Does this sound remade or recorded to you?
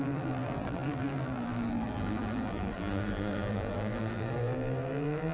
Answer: remade